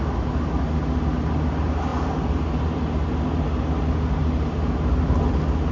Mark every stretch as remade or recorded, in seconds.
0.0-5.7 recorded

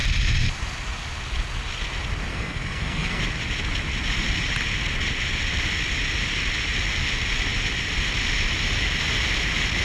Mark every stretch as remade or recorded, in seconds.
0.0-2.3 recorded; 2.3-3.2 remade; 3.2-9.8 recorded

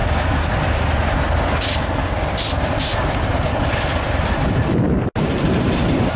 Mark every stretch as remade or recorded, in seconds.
0.0-6.2 recorded

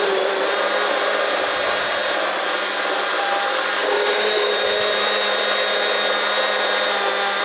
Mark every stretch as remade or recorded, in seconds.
0.0-3.8 recorded; 3.8-4.5 remade; 4.5-7.4 recorded